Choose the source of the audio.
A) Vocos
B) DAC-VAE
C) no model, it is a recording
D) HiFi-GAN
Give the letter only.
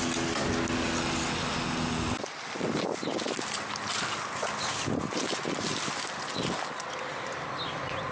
C